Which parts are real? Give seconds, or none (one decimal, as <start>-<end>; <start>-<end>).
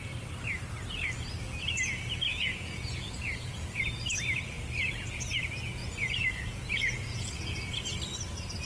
0.0-2.3; 3.8-5.8; 7.7-8.7